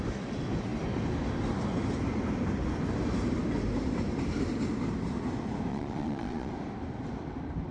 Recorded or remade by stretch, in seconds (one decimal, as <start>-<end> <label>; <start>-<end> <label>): 0.0-5.7 recorded; 5.7-6.5 remade; 6.5-7.7 recorded